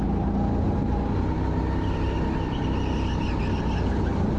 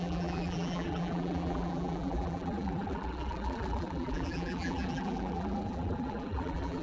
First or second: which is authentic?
first